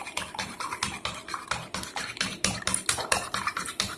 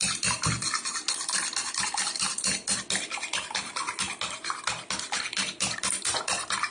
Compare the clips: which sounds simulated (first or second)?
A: first